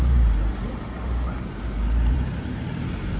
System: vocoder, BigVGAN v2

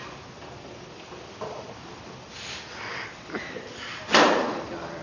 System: vocoder, BigVGAN v2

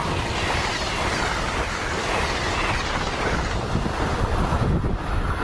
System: vocoder, BigVGAN v2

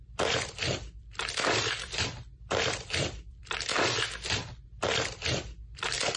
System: vocoder, BigVGAN v2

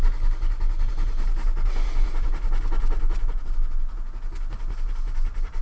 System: none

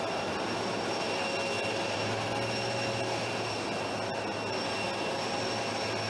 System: none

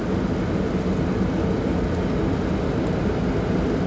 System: none